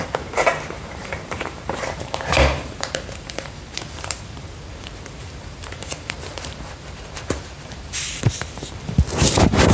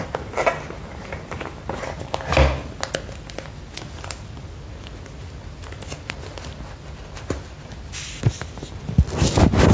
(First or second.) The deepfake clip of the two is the first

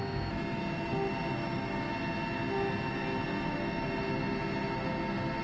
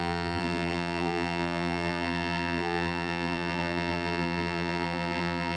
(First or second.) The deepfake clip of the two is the second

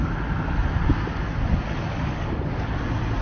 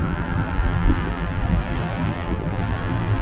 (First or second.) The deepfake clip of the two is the second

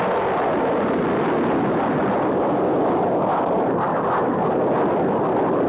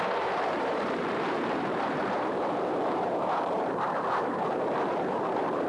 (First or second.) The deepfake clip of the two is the second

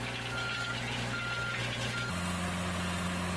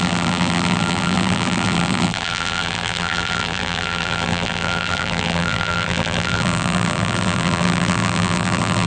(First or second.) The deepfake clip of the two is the second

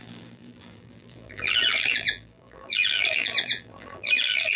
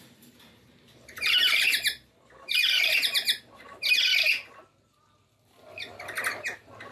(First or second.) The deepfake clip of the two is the first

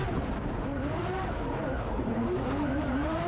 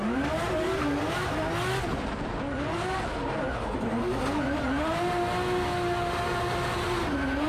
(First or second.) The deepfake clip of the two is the first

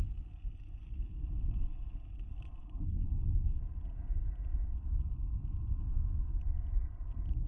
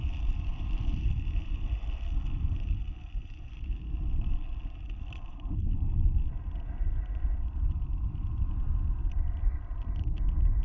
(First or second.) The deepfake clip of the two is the second